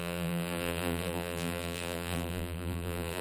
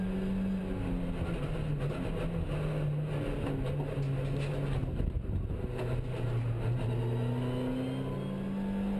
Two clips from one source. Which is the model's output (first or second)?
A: first